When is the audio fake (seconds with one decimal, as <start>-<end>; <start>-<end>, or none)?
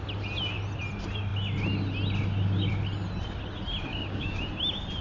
3.9-4.4